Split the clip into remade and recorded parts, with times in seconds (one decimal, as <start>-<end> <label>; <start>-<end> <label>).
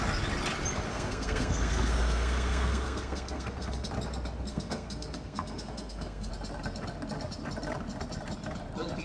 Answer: 0.0-0.9 recorded; 0.9-3.9 remade; 3.9-4.5 recorded; 4.5-6.3 remade; 6.3-9.0 recorded